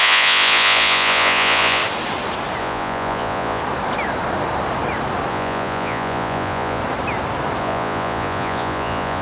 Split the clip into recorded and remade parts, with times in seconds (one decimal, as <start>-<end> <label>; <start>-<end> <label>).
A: 0.0-1.8 remade; 1.8-2.6 recorded; 2.6-3.6 remade; 3.6-5.3 recorded; 5.3-6.8 remade; 6.8-7.6 recorded; 7.6-9.2 remade